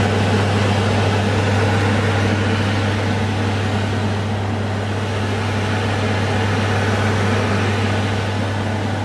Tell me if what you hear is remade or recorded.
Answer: recorded